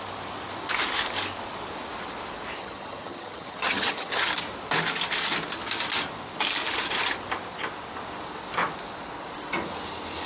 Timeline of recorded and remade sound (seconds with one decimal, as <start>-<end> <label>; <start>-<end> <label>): 0.0-2.6 recorded; 2.6-4.3 remade; 4.3-10.3 recorded

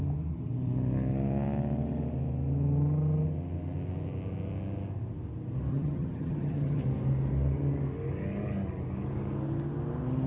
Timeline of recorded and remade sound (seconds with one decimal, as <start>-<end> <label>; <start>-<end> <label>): 0.0-5.7 recorded; 5.7-6.8 remade; 6.8-10.3 recorded

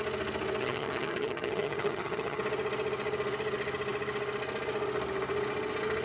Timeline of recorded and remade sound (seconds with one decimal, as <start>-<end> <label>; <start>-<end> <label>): 0.0-0.6 recorded; 0.6-2.4 remade; 2.4-6.0 recorded

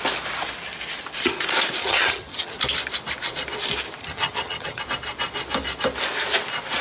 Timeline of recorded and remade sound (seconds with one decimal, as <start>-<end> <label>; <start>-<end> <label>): 0.0-1.8 recorded; 1.8-2.6 remade; 2.6-4.0 recorded; 4.0-4.8 remade; 4.8-6.8 recorded

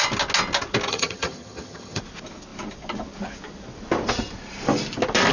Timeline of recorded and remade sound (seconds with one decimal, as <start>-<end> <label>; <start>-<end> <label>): 0.0-0.9 recorded; 0.9-2.0 remade; 2.0-5.3 recorded

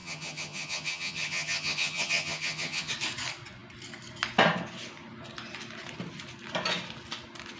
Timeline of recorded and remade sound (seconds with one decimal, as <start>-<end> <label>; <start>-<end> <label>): 0.0-2.9 remade; 2.9-7.6 recorded

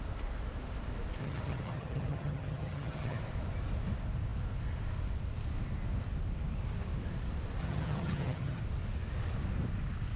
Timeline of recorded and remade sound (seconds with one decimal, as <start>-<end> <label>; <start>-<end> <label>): 0.0-1.2 recorded; 1.2-3.2 remade; 3.2-7.6 recorded; 7.6-8.6 remade; 8.6-10.2 recorded

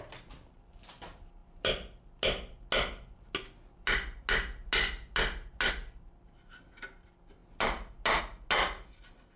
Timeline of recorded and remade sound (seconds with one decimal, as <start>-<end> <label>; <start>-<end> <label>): 0.0-9.4 recorded